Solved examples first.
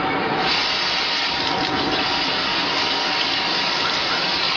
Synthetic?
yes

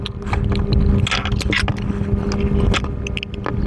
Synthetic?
no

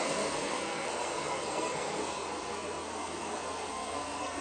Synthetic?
yes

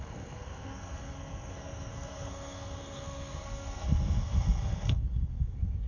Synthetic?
yes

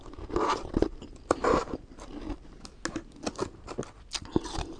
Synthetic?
no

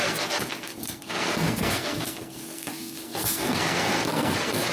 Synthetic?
yes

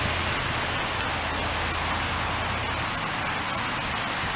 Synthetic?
no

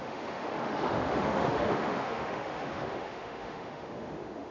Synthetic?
yes